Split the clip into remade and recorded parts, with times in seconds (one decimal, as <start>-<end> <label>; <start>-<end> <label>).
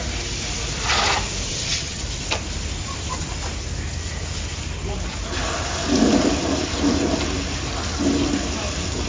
0.0-1.5 recorded; 1.5-2.0 remade; 2.0-9.1 recorded